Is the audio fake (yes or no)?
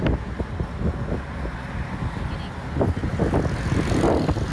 no